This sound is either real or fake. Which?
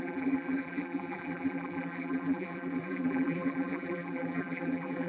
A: fake